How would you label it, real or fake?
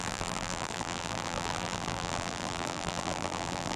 fake